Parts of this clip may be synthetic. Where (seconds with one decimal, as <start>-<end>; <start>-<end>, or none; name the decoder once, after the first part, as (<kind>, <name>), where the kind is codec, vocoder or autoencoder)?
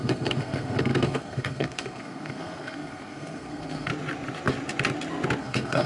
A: 0.0-3.9 (codec, SNAC); 5.4-5.9